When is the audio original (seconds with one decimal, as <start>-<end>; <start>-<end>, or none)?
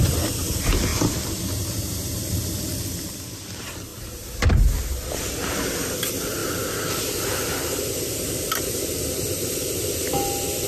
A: 0.0-10.7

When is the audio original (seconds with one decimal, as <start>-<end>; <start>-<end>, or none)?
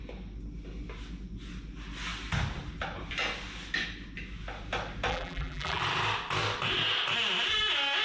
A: 0.0-5.1; 5.8-8.0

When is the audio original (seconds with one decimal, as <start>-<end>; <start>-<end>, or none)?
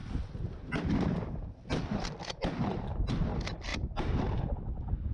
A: 3.1-3.7; 4.4-5.1